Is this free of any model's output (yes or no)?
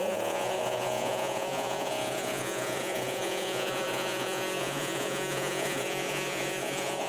no